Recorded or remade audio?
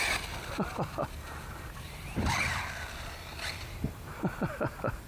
recorded